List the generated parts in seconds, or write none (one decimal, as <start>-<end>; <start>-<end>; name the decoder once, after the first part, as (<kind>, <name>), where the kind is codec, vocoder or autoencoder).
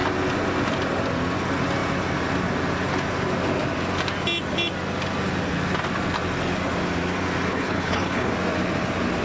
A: 7.5-8.3 (codec, HILCodec)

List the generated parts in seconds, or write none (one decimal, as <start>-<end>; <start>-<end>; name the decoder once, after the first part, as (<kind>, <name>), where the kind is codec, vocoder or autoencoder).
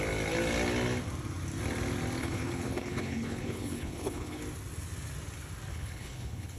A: 2.2-4.4 (codec, HILCodec); 5.7-6.6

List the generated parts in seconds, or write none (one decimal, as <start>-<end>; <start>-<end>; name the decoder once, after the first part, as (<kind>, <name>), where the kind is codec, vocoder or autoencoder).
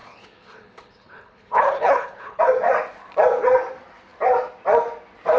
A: 0.0-2.4 (codec, HILCodec)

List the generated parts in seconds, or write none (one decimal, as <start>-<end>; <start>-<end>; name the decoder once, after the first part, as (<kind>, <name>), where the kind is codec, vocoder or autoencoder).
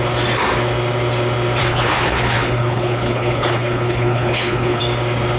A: 1.6-4.8 (codec, HILCodec)